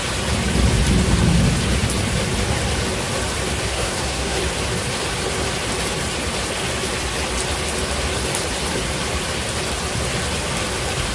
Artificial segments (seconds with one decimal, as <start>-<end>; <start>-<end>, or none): 3.7-4.4

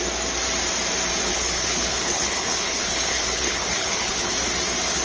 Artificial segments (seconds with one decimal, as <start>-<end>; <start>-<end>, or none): 1.3-4.3

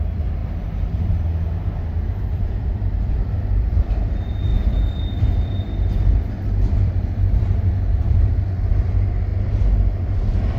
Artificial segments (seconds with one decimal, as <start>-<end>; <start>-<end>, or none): 0.0-0.4; 2.3-10.6

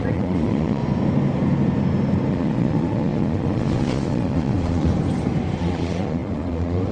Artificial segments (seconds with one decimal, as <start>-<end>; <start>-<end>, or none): 0.0-0.8; 2.3-4.9; 5.6-6.9

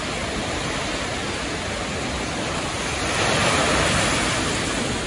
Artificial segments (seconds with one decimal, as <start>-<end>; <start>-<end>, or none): none

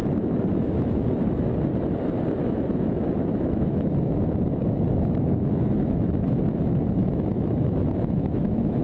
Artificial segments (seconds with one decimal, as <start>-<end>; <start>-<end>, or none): 0.5-1.5; 2.4-8.8

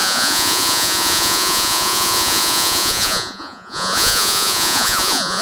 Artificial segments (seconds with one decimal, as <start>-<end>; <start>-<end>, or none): 0.0-5.4